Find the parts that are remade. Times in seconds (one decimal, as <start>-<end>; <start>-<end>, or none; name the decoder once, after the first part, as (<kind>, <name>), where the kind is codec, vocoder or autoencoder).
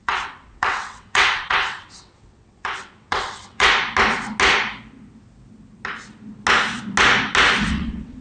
0.0-3.7 (vocoder, WaveNeXt); 7.7-8.2